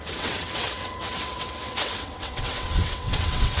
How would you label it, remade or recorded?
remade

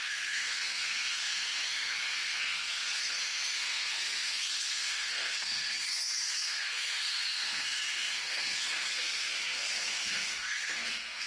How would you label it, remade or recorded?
remade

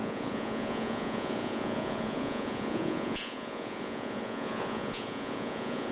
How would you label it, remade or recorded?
remade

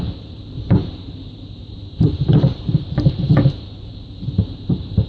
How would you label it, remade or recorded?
remade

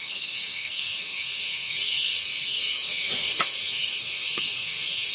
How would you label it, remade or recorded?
remade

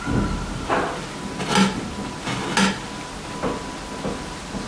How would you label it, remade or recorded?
recorded